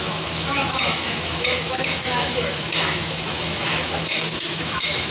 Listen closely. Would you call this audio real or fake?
fake